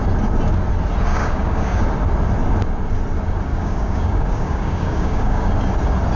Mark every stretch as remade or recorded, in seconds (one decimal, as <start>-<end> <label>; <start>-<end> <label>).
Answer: 0.0-1.1 recorded; 1.1-1.8 remade; 1.8-3.5 recorded; 3.5-5.5 remade; 5.5-6.2 recorded